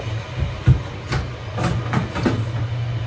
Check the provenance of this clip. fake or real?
real